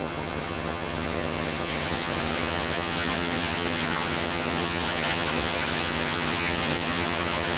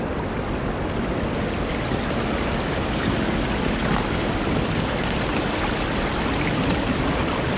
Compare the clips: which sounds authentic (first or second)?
second